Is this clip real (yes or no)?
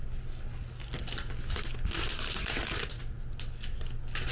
yes